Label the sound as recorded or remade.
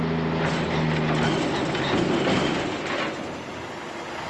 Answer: recorded